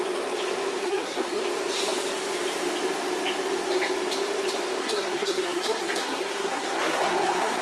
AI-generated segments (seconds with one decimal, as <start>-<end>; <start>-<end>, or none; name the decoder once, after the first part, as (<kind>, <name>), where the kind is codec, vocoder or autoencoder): 0.8-1.4 (codec, SNAC); 4.8-7.6